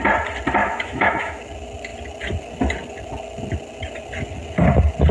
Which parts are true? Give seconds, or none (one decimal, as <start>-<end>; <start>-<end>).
0.0-0.6; 1.4-5.1